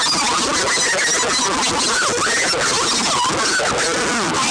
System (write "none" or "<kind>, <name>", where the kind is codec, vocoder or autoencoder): none